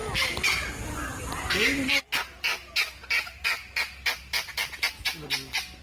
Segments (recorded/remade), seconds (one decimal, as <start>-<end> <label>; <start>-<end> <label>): 0.0-5.8 recorded